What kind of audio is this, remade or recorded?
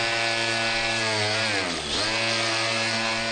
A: recorded